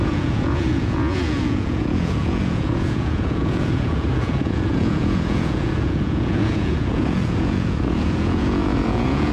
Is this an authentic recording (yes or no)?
no